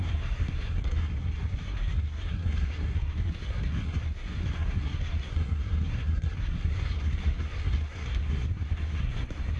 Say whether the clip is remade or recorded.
remade